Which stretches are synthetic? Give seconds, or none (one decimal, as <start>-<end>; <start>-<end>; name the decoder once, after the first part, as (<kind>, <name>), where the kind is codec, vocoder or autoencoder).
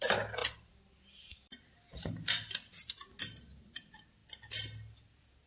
0.0-4.2 (vocoder, BigVGAN v2)